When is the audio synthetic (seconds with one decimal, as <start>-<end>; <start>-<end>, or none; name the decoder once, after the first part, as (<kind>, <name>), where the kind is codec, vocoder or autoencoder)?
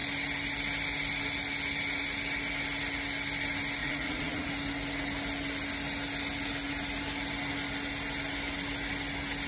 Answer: 3.8-4.5 (vocoder, Vocos)